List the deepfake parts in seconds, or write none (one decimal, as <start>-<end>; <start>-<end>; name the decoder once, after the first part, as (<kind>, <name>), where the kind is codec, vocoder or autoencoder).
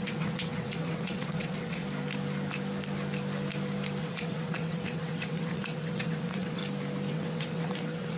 0.0-1.8 (vocoder, WaveNeXt); 4.0-6.6; 7.1-8.2